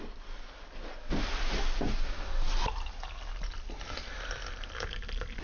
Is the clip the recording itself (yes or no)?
yes